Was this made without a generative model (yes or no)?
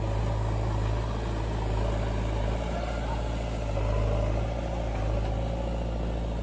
yes